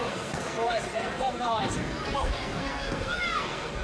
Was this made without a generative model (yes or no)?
no